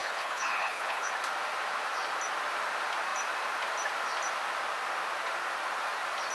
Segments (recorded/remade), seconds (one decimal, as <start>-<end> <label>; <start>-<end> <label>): 0.0-1.1 remade; 1.1-6.3 recorded